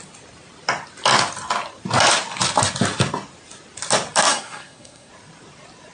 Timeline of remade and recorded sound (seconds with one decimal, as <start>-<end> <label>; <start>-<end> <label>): 0.0-4.3 recorded; 4.3-5.1 remade; 5.1-5.9 recorded